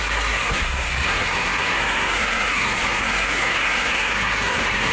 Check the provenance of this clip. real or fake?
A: fake